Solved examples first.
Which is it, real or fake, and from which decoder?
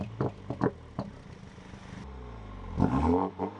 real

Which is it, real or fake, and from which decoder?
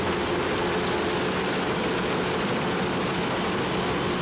real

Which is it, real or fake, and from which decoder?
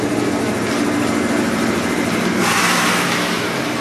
real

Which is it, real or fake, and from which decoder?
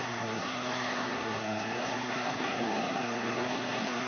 fake, codec, SNAC